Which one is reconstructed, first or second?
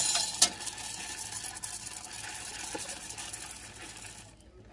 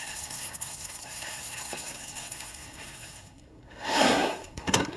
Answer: second